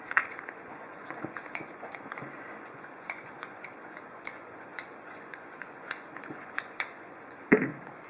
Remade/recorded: remade